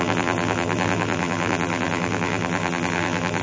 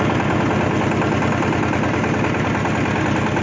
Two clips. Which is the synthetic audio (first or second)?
first